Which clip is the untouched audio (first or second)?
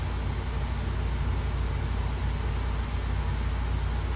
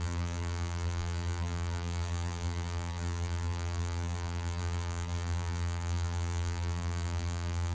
first